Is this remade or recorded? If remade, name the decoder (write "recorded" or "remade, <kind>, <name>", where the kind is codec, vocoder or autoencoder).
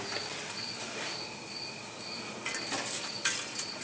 recorded